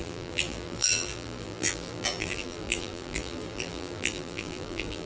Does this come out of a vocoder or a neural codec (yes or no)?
yes